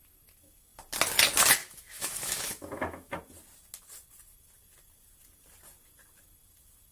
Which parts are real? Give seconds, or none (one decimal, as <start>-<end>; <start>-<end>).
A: 0.0-1.6; 3.2-6.9